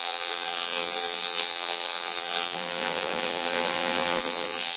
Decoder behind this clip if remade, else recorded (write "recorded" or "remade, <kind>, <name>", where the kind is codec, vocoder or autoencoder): remade, vocoder, BigVGAN v2